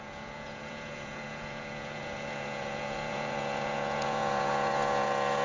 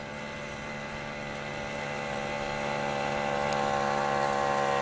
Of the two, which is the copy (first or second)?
first